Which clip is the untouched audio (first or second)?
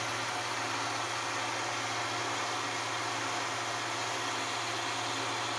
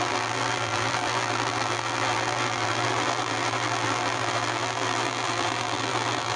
first